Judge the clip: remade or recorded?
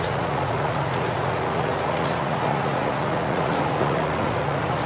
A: remade